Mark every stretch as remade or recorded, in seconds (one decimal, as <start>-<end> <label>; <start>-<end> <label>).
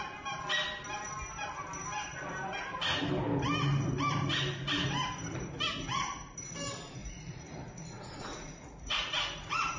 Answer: 0.0-7.0 recorded; 7.0-9.8 remade